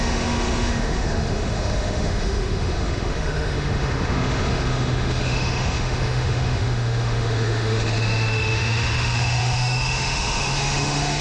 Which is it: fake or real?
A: fake